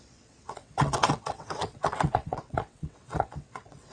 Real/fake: fake